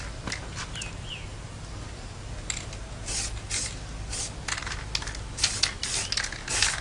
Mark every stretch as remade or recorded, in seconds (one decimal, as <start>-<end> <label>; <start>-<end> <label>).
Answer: 0.0-6.8 recorded